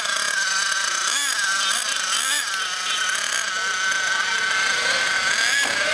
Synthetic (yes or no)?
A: no